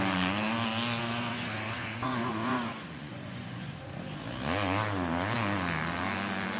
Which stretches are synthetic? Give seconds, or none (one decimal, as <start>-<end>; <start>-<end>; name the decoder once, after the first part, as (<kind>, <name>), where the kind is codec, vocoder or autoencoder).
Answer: 1.0-3.7 (vocoder, Vocos)